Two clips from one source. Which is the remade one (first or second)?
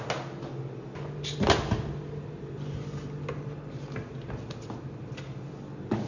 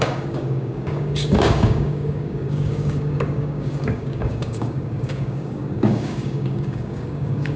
second